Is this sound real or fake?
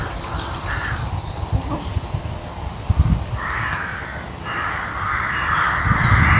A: real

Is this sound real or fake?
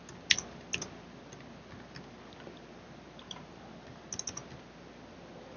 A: real